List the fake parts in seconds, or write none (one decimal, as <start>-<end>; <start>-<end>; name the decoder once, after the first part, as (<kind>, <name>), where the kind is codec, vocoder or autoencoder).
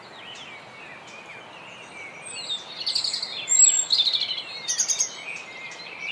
none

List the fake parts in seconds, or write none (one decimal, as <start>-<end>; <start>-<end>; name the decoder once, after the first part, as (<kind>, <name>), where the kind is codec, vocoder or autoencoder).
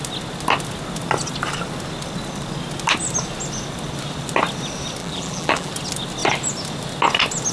5.0-5.7 (vocoder, BigVGAN v2)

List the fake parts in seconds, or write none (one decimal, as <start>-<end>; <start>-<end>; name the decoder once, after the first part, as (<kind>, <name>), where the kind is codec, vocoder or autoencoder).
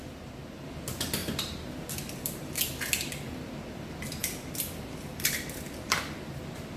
1.2-2.6 (vocoder, BigVGAN v2); 4.2-6.0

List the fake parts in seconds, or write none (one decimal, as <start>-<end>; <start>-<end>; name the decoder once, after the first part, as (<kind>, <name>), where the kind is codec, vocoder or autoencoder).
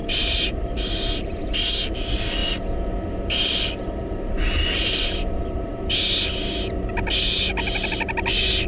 0.0-1.7 (vocoder, BigVGAN v2); 2.4-5.9